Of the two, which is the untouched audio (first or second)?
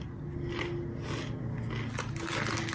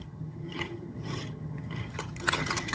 first